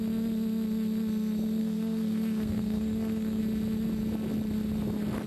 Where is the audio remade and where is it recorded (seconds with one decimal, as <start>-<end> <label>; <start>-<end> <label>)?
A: 0.0-1.6 recorded; 1.6-3.4 remade; 3.4-5.3 recorded